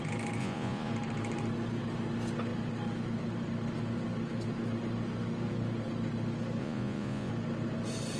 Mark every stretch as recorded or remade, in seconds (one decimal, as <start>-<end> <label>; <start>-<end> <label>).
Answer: 0.0-0.4 recorded; 0.4-0.9 remade; 0.9-6.6 recorded; 6.6-7.3 remade; 7.3-8.2 recorded